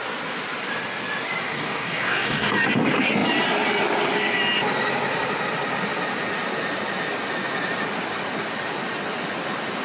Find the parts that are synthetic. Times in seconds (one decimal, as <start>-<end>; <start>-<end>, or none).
1.4-2.5